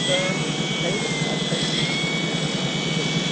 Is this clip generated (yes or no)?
no